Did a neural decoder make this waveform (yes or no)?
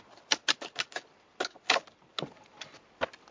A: no